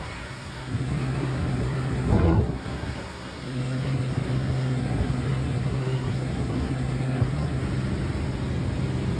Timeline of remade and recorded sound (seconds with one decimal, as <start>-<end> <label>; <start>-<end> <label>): 0.0-7.6 remade; 7.6-9.2 recorded